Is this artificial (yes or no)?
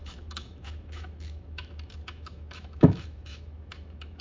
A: yes